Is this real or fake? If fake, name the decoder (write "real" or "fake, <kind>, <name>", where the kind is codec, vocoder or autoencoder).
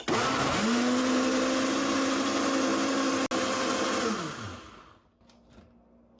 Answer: real